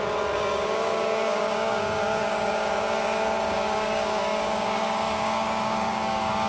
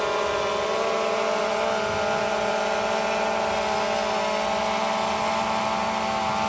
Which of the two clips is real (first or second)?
second